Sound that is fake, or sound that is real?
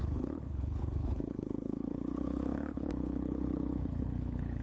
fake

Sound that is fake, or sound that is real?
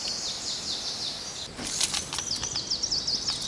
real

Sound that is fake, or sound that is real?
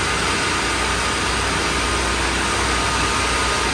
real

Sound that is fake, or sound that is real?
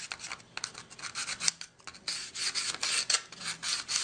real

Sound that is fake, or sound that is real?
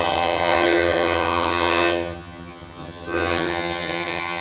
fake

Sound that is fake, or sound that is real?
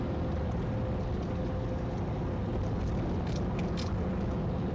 real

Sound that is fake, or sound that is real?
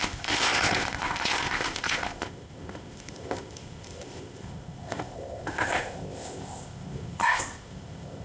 fake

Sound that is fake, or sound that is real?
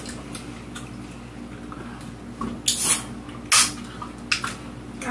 real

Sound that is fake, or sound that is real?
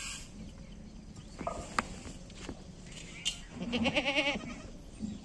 real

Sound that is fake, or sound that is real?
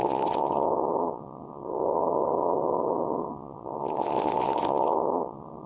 fake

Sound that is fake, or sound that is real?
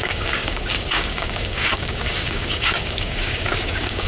fake